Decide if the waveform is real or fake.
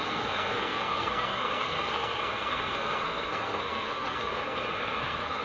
fake